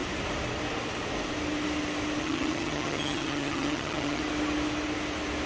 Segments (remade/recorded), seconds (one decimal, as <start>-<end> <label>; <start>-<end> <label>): 0.0-2.2 recorded; 2.2-4.2 remade; 4.2-5.5 recorded